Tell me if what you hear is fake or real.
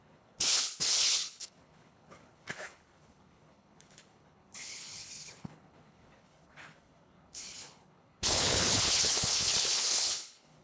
fake